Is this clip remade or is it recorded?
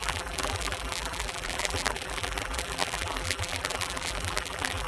remade